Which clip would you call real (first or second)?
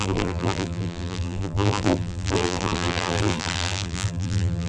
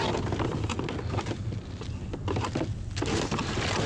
second